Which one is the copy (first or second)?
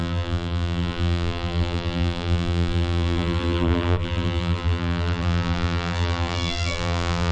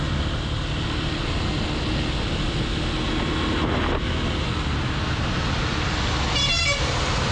first